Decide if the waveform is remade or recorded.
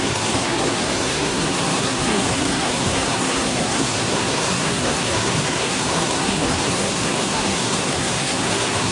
remade